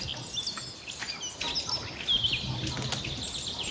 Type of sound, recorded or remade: recorded